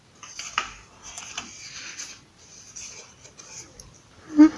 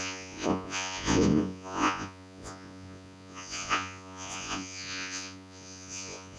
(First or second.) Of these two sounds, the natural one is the first